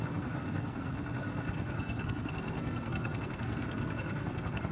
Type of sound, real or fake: fake